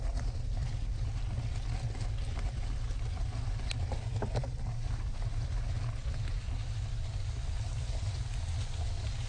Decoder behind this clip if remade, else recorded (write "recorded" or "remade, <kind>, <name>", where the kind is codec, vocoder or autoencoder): recorded